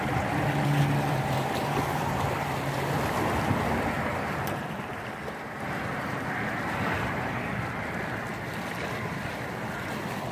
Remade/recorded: remade